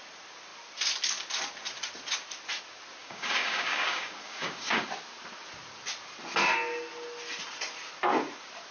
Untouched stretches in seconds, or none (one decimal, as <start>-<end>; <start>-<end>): 0.0-3.0; 4.9-8.7